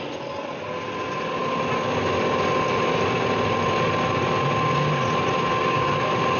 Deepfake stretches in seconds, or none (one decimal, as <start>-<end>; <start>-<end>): none